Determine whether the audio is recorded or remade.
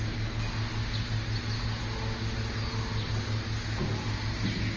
recorded